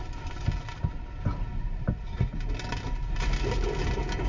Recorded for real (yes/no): yes